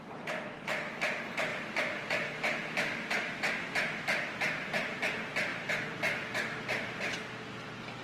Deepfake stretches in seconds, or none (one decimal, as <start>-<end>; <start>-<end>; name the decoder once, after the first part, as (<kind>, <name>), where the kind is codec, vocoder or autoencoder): 1.5-5.0 (vocoder, BigVGAN v2); 5.5-7.1